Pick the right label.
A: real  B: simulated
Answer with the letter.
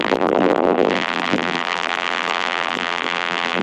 B